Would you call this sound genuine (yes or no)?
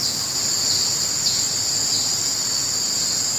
yes